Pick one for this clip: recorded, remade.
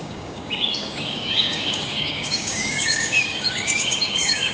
remade